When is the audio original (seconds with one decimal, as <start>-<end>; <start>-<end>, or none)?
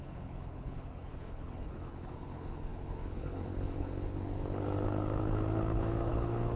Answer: none